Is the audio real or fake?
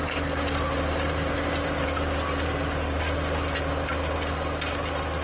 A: real